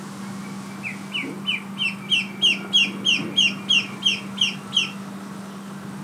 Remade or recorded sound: recorded